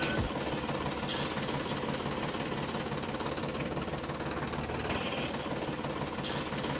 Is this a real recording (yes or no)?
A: yes